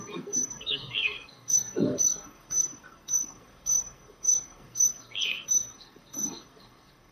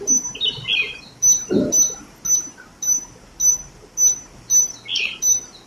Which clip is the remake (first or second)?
first